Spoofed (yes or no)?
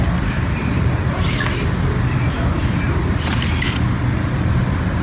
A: no